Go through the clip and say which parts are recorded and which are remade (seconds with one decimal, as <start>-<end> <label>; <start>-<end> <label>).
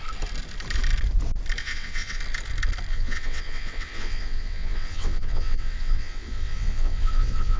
0.0-1.6 recorded; 1.6-2.2 remade; 2.2-2.9 recorded; 2.9-7.6 remade